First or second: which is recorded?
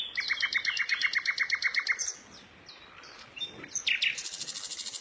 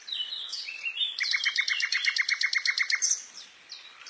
first